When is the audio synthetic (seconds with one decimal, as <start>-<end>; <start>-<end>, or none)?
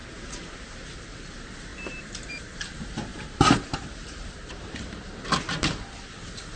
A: 0.7-1.7; 2.3-6.6